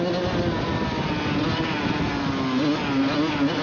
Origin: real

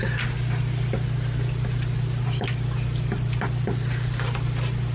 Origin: real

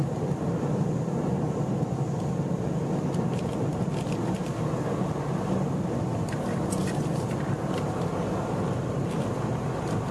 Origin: real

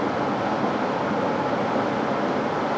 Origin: real